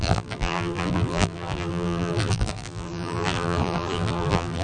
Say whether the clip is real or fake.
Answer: fake